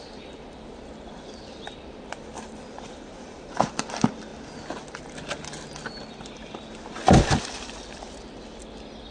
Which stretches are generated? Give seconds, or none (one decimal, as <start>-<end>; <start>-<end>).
0.0-4.3; 7.4-9.1